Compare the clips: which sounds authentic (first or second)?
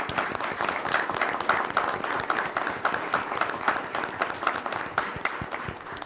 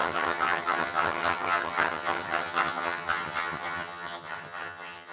first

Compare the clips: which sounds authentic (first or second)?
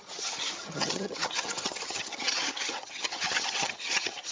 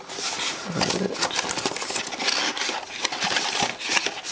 second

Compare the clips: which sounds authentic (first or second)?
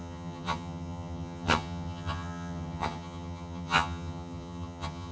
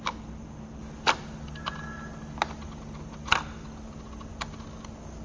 second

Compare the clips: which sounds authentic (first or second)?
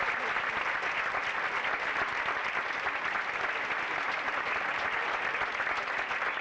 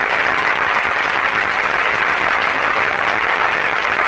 first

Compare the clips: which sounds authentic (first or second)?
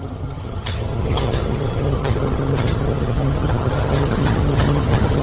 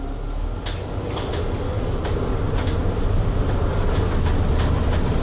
second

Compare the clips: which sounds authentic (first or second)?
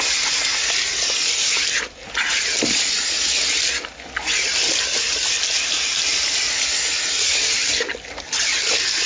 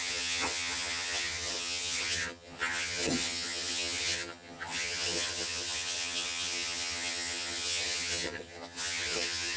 first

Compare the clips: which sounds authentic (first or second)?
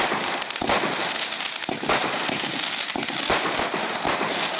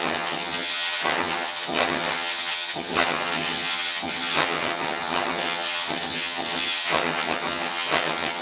first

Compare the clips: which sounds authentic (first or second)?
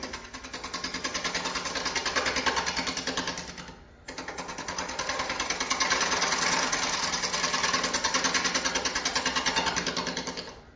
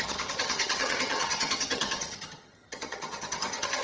first